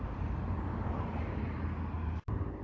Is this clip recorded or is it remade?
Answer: recorded